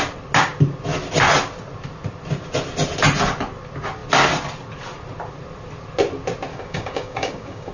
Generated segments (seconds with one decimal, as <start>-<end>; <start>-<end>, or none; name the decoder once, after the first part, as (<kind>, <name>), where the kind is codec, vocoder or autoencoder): 6.5-7.7 (codec, DAC)

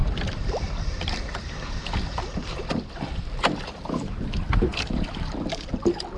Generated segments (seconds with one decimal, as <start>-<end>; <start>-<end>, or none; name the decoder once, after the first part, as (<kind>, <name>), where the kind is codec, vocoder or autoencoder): 0.0-3.1 (vocoder, BigVGAN v2); 4.7-5.7

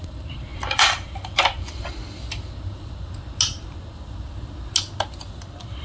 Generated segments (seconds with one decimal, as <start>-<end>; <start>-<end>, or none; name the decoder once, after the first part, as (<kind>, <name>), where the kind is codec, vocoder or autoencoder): 0.0-2.0 (vocoder, BigVGAN v2); 5.0-5.8

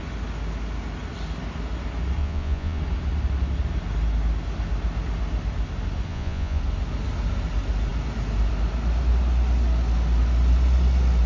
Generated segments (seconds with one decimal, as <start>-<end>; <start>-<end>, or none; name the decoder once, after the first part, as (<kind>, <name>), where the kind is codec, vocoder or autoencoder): 2.2-2.8 (vocoder, Vocos); 6.1-6.6